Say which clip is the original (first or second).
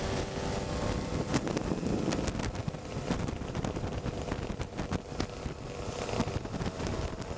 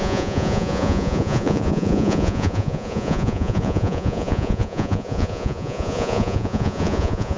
first